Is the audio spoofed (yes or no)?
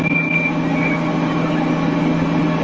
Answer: no